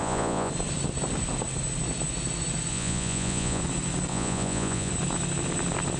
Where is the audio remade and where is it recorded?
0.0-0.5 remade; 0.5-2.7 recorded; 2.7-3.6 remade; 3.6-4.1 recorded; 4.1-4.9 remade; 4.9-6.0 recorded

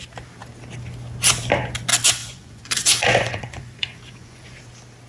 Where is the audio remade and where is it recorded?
0.0-2.2 recorded; 2.2-4.6 remade; 4.6-5.1 recorded

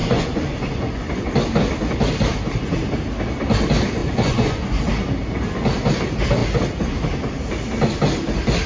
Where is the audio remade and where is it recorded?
0.0-1.2 remade; 1.2-4.0 recorded; 4.0-4.8 remade; 4.8-8.7 recorded

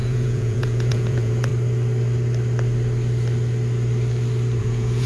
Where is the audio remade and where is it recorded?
0.0-1.5 remade; 1.5-4.6 recorded; 4.6-5.1 remade

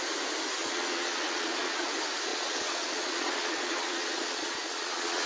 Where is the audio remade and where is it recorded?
0.0-0.6 recorded; 0.6-1.9 remade; 1.9-2.3 recorded; 2.3-5.3 remade

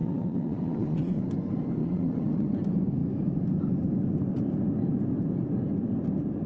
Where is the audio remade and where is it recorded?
0.0-1.2 remade; 1.2-1.8 recorded; 1.8-2.5 remade; 2.5-6.5 recorded

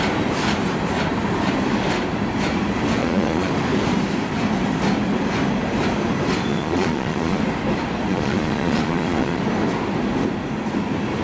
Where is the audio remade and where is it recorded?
0.0-3.0 recorded; 3.0-3.5 remade; 3.5-6.5 recorded; 6.5-7.4 remade; 7.4-8.1 recorded; 8.1-9.4 remade; 9.4-11.2 recorded